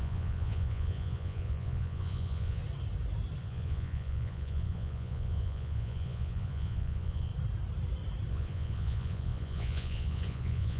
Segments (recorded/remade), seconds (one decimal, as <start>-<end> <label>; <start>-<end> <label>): 0.0-2.6 remade; 2.6-3.4 recorded; 3.4-7.3 remade; 7.3-8.3 recorded; 8.3-10.8 remade